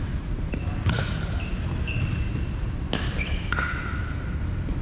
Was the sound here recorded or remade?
recorded